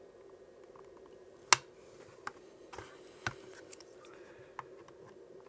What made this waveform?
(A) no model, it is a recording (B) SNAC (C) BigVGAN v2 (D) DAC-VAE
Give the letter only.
A